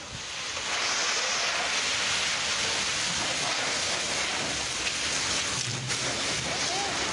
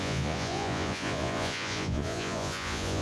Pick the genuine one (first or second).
first